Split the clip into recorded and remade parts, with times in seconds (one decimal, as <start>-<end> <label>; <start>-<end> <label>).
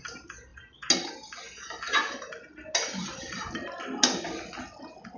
0.0-5.2 recorded